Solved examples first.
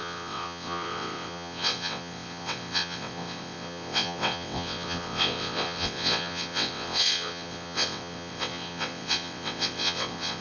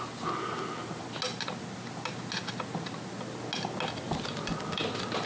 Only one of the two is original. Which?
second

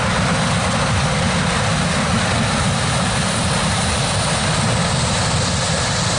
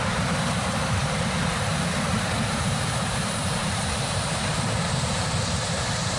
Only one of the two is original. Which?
first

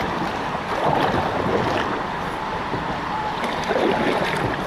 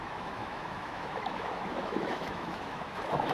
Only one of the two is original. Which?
first